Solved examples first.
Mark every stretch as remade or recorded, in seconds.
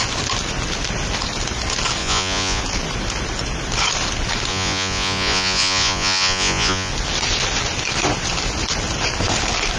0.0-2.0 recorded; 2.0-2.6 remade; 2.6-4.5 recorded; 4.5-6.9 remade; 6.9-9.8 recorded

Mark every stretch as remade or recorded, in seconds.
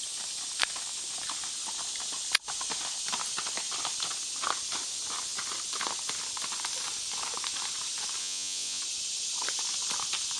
0.0-8.2 recorded; 8.2-8.8 remade; 8.8-10.4 recorded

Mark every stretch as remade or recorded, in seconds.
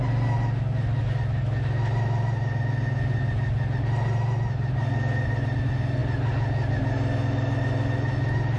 0.0-8.6 recorded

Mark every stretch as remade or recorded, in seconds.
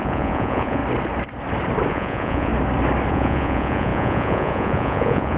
0.0-0.8 remade; 0.8-1.9 recorded; 1.9-2.5 remade; 2.5-3.1 recorded; 3.1-5.4 remade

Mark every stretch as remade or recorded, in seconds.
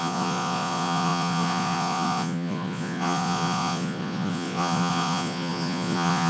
0.0-6.3 remade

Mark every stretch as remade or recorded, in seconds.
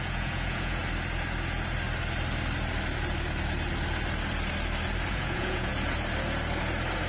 0.0-0.8 remade; 0.8-5.1 recorded; 5.1-5.7 remade; 5.7-7.1 recorded